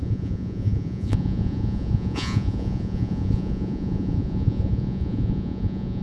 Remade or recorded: remade